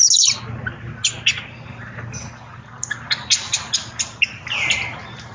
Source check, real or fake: real